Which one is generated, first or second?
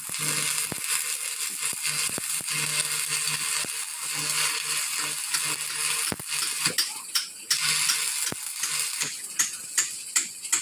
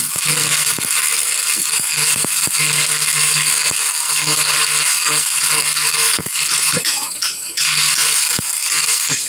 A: second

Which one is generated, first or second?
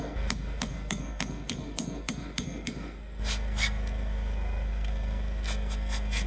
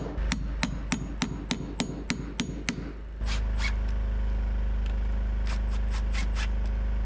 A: first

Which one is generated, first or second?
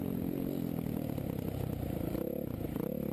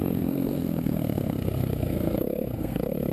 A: second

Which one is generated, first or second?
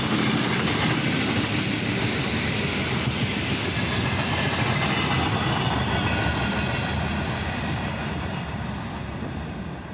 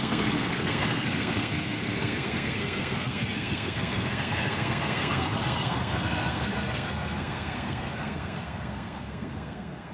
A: second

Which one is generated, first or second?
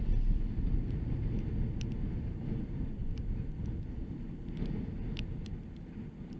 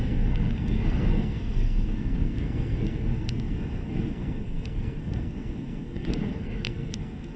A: second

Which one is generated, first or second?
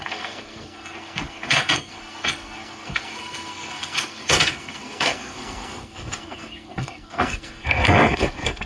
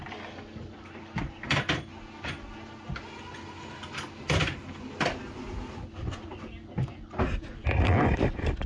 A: first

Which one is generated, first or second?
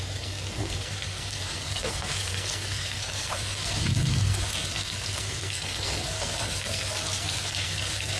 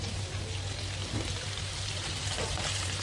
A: first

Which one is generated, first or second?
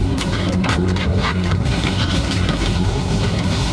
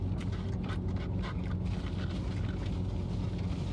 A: first